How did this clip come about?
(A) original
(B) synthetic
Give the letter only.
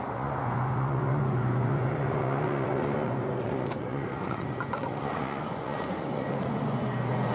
B